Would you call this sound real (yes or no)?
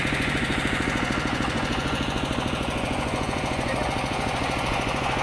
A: no